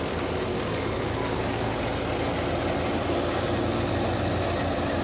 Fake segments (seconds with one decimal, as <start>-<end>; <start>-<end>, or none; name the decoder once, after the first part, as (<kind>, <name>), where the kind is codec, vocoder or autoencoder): 0.5-1.8 (codec, DAC)